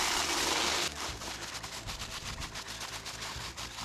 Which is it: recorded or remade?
recorded